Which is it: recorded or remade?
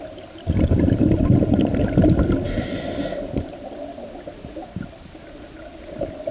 recorded